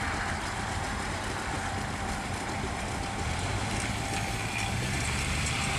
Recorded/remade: recorded